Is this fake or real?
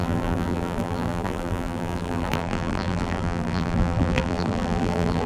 fake